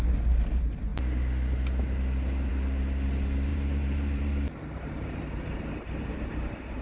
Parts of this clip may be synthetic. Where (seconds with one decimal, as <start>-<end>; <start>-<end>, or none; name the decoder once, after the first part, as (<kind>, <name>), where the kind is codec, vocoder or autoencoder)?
3.5-6.1 (vocoder, BigVGAN v2)